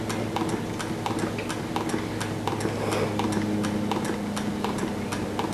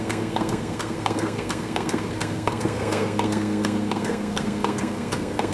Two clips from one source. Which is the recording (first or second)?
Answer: first